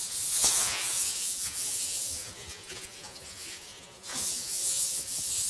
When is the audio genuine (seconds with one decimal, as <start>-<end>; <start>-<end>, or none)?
none